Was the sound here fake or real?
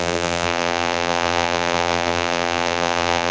fake